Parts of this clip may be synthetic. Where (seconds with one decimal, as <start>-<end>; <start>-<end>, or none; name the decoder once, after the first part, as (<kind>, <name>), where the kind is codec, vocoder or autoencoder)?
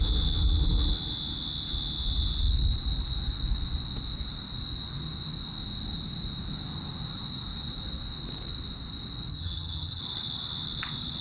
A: 9.3-10.0 (vocoder, HiFi-GAN)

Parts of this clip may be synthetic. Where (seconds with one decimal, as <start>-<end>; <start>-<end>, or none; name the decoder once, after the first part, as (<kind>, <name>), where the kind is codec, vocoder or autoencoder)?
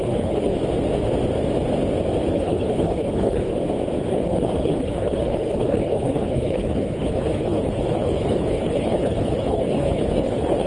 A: 0.0-0.6 (codec, HILCodec); 2.3-3.5; 4.1-10.7